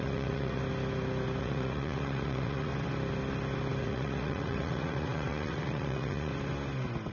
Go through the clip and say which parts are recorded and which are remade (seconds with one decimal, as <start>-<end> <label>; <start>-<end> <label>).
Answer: 0.0-0.6 remade; 0.6-1.4 recorded; 1.4-2.7 remade; 2.7-3.8 recorded; 3.8-6.3 remade; 6.3-7.1 recorded